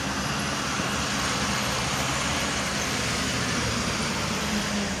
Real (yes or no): yes